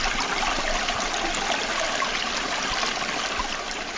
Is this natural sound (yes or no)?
yes